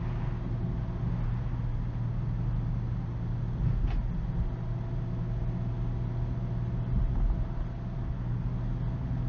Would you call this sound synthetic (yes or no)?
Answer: no